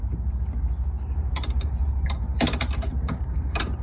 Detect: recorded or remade remade